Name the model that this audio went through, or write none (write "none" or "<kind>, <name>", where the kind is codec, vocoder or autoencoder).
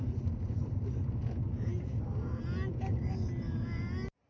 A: none